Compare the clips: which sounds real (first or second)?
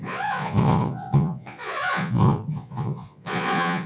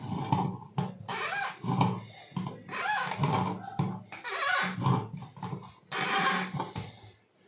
second